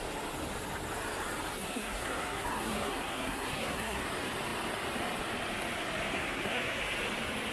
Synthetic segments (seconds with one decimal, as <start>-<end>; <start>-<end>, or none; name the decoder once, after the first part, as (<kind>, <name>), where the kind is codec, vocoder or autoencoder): 1.6-4.0 (codec, SNAC); 6.2-6.8